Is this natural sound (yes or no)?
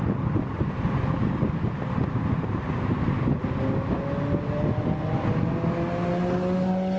yes